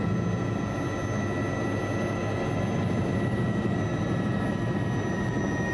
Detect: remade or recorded recorded